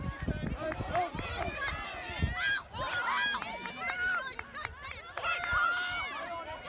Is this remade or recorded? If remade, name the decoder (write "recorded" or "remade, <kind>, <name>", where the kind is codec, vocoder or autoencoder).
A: recorded